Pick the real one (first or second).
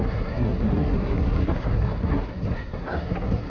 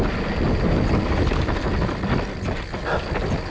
second